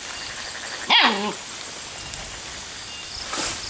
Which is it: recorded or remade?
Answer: recorded